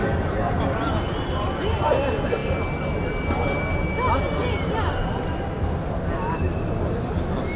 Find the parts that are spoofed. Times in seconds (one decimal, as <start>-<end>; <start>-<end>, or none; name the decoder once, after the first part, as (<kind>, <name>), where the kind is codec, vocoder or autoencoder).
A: none